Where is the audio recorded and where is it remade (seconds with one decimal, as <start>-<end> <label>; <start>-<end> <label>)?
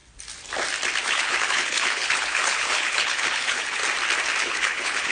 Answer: 0.0-1.0 recorded; 1.0-3.8 remade; 3.8-4.4 recorded; 4.4-5.1 remade